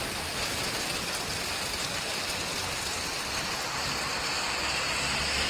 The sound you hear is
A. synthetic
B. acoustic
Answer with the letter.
B